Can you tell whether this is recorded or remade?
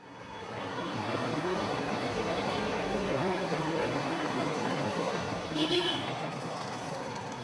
remade